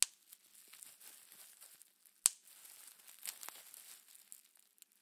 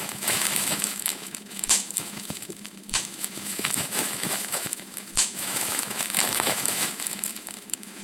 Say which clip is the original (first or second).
first